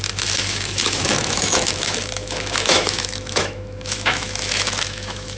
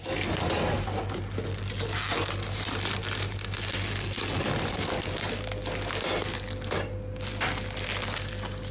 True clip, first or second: second